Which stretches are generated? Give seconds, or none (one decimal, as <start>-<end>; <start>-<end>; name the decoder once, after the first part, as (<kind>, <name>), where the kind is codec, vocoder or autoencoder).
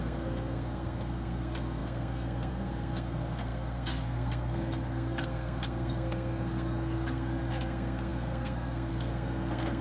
0.0-9.8 (codec, SNAC)